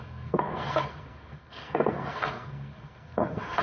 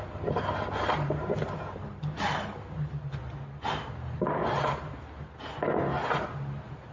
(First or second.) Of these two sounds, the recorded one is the second